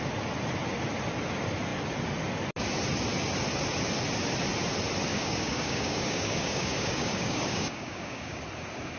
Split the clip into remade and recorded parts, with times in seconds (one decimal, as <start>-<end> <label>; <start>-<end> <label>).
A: 0.0-5.1 recorded; 5.1-8.4 remade; 8.4-9.0 recorded